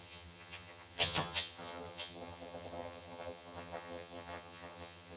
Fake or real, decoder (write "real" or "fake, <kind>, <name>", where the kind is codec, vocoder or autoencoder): fake, vocoder, HiFi-GAN